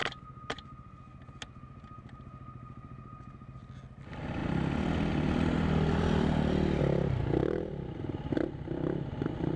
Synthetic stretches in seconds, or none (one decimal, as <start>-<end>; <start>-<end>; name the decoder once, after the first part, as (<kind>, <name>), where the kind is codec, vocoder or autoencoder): none